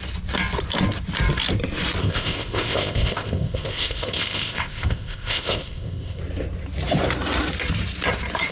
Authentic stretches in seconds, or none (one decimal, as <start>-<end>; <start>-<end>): 0.0-2.0; 6.2-8.5